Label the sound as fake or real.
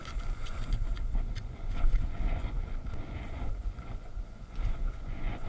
fake